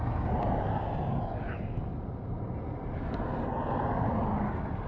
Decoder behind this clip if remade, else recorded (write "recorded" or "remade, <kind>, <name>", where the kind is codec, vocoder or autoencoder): recorded